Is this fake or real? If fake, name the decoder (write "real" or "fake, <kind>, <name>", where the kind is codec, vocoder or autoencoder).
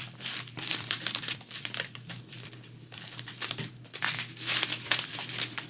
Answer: fake, vocoder, BigVGAN v2